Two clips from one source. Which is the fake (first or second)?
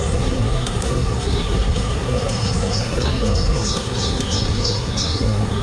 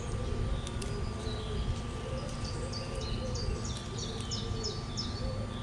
first